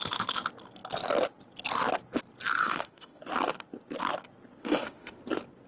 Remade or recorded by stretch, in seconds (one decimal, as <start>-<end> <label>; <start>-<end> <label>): 0.0-2.6 recorded; 2.6-3.2 remade; 3.2-4.6 recorded; 4.6-5.2 remade; 5.2-5.7 recorded